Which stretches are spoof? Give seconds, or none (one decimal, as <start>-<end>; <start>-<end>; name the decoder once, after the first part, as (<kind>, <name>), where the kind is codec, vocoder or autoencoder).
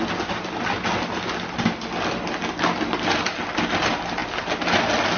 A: none